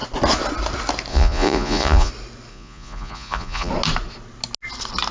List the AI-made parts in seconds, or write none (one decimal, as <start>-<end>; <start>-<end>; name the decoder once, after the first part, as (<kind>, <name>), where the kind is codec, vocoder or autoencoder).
1.1-2.1 (vocoder, Vocos); 2.5-3.7